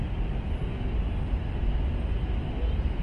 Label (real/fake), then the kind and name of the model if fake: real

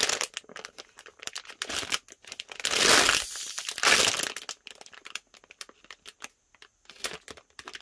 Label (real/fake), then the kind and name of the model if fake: real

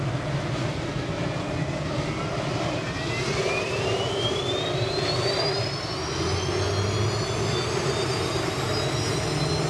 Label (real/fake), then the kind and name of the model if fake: real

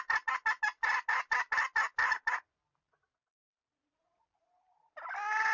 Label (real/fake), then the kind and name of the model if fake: real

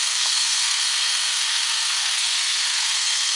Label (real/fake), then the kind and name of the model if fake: fake, codec, SNAC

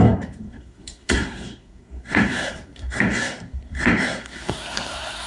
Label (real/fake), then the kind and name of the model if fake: fake, codec, SNAC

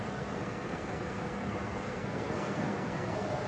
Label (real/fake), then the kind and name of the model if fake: fake, codec, SNAC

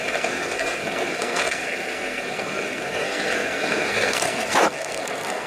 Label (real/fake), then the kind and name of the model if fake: fake, codec, SNAC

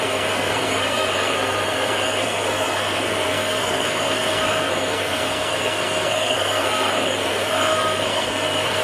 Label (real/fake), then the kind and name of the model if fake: fake, codec, SNAC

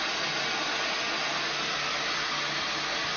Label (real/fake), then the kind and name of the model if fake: real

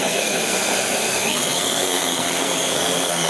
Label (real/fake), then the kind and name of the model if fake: fake, codec, SNAC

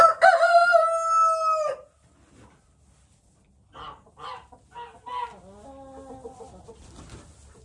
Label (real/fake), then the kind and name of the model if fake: real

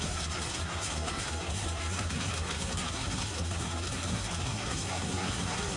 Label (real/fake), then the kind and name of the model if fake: fake, codec, SNAC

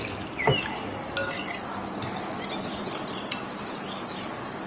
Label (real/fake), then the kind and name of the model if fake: real